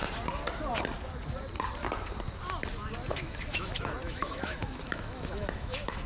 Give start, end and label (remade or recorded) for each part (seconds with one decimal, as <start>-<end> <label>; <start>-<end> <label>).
0.0-3.1 recorded; 3.1-6.1 remade

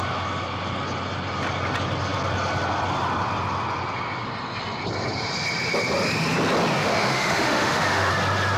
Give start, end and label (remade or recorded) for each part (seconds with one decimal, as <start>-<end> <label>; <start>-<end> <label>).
0.0-6.8 recorded; 6.8-8.1 remade; 8.1-8.6 recorded

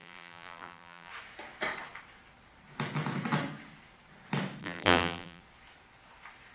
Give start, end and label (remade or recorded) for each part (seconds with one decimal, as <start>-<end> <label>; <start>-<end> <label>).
0.0-1.1 remade; 1.1-4.6 recorded; 4.6-5.4 remade; 5.4-6.5 recorded

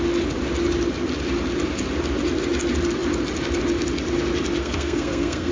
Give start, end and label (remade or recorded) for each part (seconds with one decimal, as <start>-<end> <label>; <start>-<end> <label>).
0.0-4.6 recorded; 4.6-5.5 remade

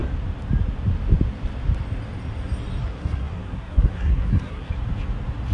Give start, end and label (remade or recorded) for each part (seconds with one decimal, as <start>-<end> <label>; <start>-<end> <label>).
0.0-2.8 recorded; 2.8-4.7 remade; 4.7-5.5 recorded

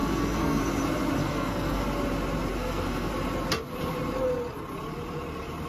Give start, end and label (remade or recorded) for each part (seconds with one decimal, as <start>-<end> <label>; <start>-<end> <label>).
0.0-0.6 remade; 0.6-1.2 recorded; 1.2-1.8 remade; 1.8-2.5 recorded; 2.5-3.1 remade; 3.1-5.7 recorded

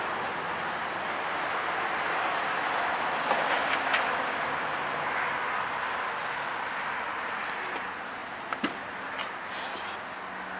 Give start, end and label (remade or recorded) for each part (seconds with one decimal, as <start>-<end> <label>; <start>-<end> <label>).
0.0-10.6 recorded

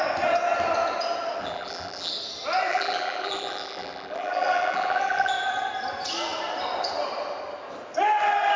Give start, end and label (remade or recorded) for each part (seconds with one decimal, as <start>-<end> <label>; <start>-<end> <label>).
0.0-1.4 recorded; 1.4-2.1 remade; 2.1-2.7 recorded; 2.7-5.3 remade; 5.3-8.6 recorded